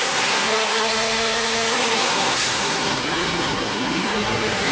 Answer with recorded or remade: remade